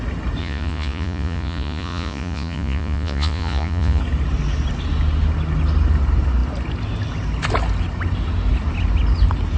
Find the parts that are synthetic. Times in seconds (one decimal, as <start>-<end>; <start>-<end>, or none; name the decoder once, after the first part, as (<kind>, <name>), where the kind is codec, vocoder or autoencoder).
0.4-4.0 (vocoder, Vocos)